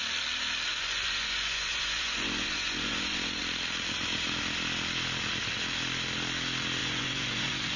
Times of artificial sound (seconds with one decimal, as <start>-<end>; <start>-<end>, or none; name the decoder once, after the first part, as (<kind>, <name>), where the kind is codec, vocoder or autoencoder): 0.7-3.4 (vocoder, Vocos); 6.8-7.8